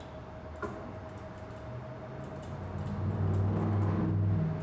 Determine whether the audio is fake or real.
real